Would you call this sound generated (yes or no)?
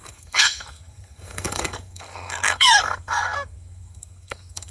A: yes